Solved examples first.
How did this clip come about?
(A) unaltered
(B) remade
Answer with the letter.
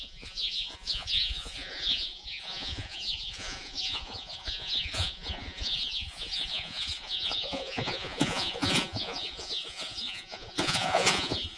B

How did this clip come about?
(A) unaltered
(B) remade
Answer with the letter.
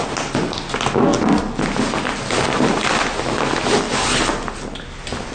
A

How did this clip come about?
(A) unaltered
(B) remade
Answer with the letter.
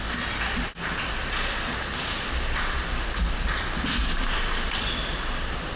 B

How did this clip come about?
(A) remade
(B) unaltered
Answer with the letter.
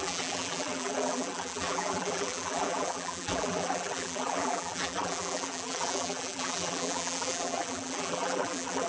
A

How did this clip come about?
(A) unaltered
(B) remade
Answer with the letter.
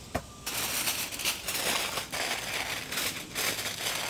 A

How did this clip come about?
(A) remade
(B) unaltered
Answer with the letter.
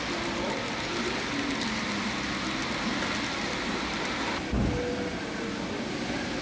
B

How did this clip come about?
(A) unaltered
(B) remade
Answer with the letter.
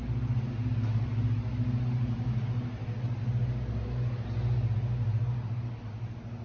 A